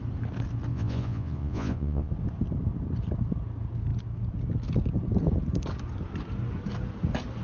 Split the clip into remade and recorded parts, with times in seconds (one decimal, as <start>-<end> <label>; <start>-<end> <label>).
0.0-0.7 recorded; 0.7-2.1 remade; 2.1-7.4 recorded